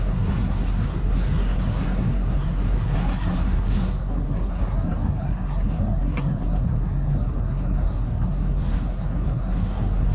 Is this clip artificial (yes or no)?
yes